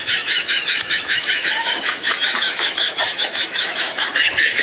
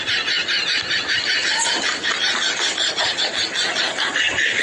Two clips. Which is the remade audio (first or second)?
first